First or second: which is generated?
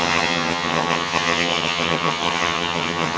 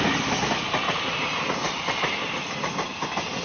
first